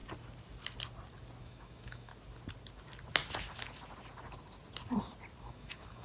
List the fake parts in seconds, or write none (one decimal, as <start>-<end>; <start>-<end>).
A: 1.4-2.1; 5.4-6.0